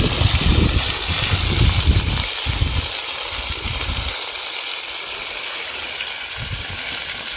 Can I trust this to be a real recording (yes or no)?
yes